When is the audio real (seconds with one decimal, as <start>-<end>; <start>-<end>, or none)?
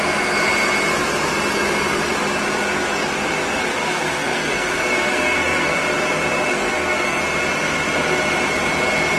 0.0-3.7; 5.8-6.5; 7.2-9.2